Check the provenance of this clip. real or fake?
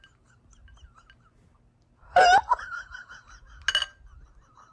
real